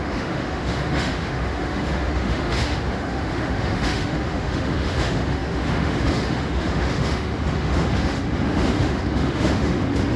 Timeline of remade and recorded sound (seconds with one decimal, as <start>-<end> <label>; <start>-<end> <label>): 0.0-10.2 remade